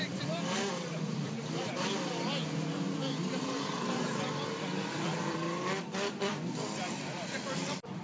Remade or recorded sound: remade